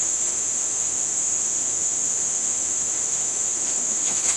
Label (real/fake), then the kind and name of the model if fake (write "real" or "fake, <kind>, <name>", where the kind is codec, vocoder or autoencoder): fake, autoencoder, DAC-VAE